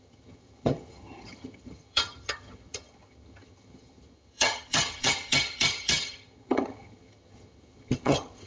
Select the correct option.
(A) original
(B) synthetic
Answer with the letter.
B